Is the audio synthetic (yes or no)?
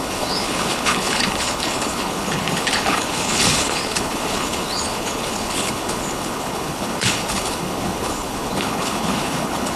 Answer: yes